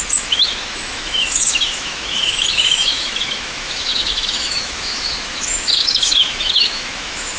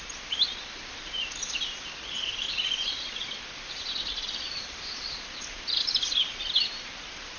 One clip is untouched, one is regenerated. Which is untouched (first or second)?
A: second